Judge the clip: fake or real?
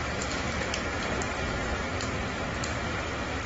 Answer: fake